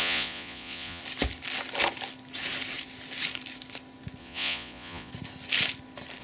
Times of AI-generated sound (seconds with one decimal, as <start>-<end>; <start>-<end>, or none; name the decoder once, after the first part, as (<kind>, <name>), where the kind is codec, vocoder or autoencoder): 0.0-1.0 (vocoder, Vocos); 4.2-5.1